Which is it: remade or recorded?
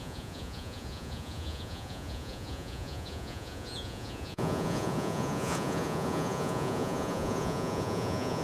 remade